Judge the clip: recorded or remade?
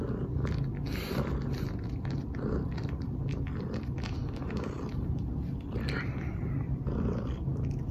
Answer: recorded